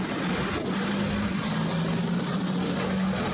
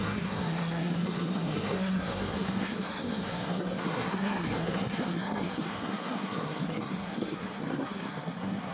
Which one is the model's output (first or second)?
second